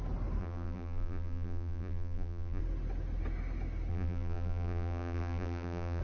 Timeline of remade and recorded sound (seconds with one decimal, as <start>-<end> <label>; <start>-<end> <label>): 0.0-0.4 recorded; 0.4-2.6 remade; 2.6-3.9 recorded; 3.9-6.0 remade